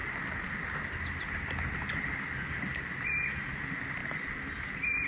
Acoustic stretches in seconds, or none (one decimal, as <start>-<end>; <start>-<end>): 0.0-5.1